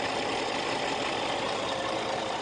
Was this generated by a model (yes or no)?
no